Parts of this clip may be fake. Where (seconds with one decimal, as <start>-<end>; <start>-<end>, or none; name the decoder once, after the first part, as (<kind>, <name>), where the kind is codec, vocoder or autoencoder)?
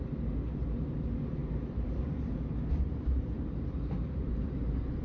1.4-4.3 (vocoder, BigVGAN v2)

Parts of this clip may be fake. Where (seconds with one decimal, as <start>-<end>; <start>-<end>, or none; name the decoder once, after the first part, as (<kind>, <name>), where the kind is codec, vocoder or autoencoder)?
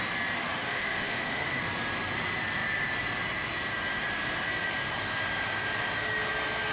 0.4-1.6 (autoencoder, DAC-VAE)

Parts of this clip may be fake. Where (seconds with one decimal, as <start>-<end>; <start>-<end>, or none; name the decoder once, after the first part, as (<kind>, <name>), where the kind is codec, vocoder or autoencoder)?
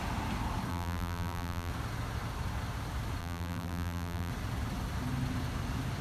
0.7-1.7 (vocoder, BigVGAN v2); 3.2-4.3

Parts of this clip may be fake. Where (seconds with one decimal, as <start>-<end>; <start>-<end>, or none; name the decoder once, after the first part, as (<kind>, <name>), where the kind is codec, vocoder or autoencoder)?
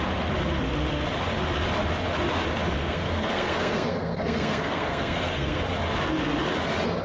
2.8-5.6 (codec, SNAC)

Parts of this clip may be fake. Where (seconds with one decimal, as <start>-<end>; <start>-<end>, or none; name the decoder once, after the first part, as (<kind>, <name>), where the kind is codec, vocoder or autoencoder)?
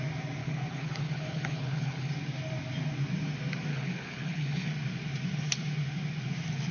0.4-2.1 (codec, HILCodec); 3.7-4.7